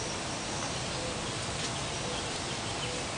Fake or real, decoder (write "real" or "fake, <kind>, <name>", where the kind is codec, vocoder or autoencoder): real